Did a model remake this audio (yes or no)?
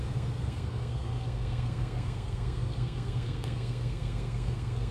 yes